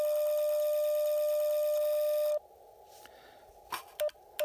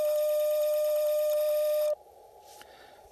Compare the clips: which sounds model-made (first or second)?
second